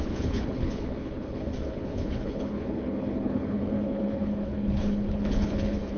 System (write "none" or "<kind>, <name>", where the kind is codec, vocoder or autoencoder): codec, HILCodec